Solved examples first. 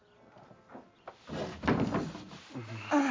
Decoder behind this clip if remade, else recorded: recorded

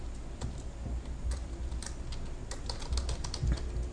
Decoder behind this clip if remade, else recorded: recorded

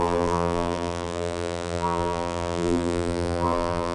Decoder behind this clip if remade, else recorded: remade, vocoder, BigVGAN v2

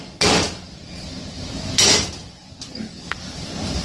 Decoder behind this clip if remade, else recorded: recorded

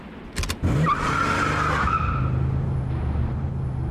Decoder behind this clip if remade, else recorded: recorded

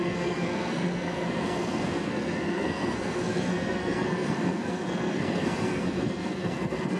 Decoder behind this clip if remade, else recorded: remade, codec, SNAC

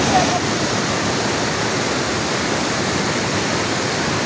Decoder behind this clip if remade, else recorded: recorded